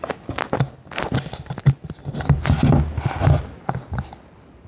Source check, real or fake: real